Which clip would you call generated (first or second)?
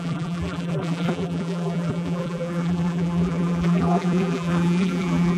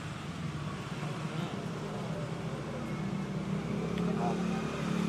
first